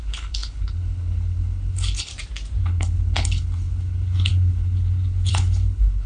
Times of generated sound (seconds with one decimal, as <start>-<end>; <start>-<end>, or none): 0.0-2.1; 2.6-6.1